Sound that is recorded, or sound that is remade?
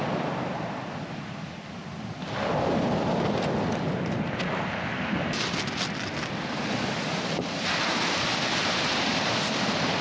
recorded